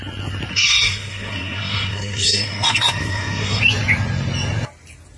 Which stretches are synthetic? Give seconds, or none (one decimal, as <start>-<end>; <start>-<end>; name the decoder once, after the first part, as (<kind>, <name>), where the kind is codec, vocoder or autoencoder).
0.5-3.6 (codec, SNAC)